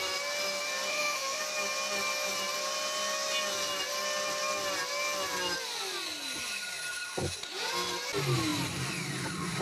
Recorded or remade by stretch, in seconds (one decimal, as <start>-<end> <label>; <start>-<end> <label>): 0.0-0.9 recorded; 0.9-1.4 remade; 1.4-9.6 recorded